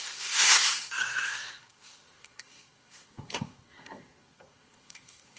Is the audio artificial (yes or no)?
yes